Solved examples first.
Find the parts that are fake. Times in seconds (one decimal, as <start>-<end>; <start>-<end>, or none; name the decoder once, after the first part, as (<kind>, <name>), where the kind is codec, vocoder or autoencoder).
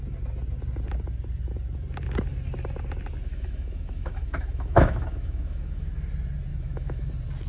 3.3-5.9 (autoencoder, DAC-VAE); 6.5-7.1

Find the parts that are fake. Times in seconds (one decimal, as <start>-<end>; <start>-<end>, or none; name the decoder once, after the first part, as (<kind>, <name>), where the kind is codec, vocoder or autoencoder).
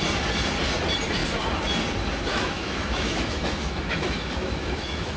2.3-5.2 (autoencoder, DAC-VAE)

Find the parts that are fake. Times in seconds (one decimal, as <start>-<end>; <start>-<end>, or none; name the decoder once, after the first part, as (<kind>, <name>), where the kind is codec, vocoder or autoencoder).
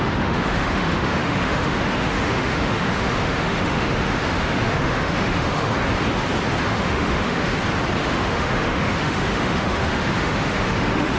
0.0-5.7 (autoencoder, DAC-VAE); 6.7-7.5; 8.0-11.2